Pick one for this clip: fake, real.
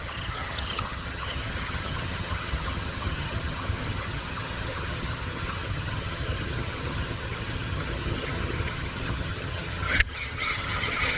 fake